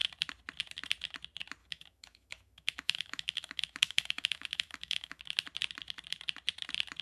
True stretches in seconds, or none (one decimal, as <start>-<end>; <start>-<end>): 0.0-1.6; 5.2-7.0